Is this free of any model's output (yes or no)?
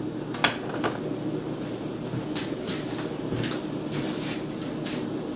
yes